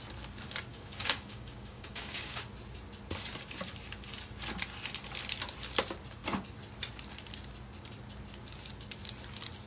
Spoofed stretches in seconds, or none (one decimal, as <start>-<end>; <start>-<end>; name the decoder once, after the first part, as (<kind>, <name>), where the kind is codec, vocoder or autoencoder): 0.7-2.4 (codec, DAC)